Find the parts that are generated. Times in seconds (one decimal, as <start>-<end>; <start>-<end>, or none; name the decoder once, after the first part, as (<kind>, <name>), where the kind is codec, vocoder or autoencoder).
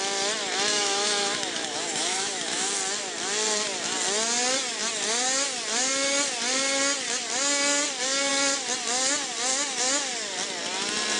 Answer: 0.7-2.7 (autoencoder, DAC-VAE)